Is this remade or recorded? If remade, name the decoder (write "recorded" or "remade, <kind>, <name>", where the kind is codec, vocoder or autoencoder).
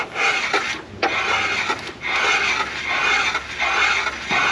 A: recorded